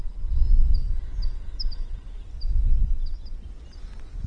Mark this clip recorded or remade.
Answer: recorded